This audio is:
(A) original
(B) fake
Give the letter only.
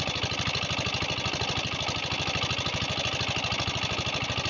A